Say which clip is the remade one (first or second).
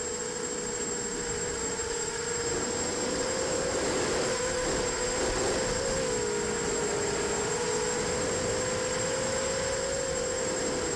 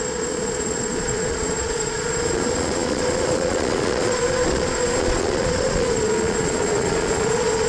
second